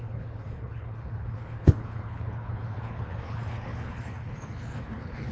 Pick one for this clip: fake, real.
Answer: fake